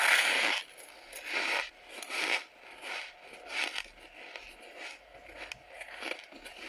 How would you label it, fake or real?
real